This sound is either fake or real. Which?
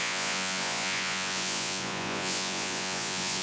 fake